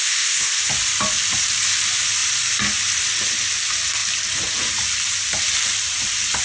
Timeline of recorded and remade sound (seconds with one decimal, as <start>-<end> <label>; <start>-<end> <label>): 0.0-0.6 remade; 0.6-6.4 recorded